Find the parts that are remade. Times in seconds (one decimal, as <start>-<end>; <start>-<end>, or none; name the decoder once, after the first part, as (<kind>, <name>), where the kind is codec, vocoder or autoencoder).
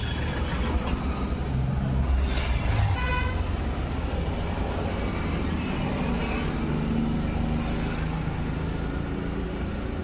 none